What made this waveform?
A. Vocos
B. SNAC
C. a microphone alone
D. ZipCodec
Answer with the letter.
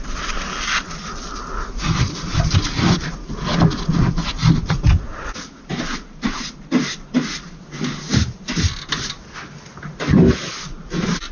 C